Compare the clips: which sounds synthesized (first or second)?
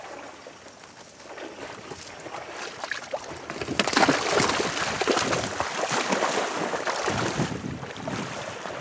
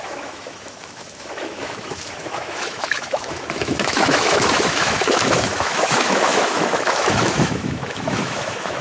second